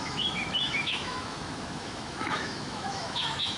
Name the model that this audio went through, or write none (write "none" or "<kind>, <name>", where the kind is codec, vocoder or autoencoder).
autoencoder, DAC-VAE